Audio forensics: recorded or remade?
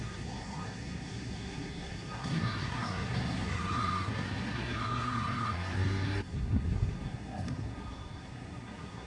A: remade